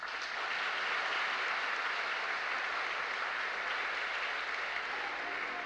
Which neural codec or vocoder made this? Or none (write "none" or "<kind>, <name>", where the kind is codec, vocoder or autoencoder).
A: none